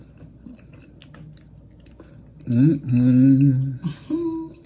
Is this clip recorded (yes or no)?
yes